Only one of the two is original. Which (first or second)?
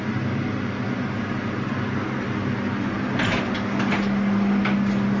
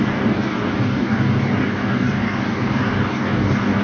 first